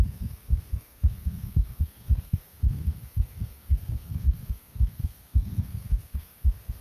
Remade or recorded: remade